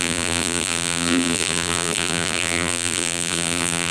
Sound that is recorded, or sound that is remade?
remade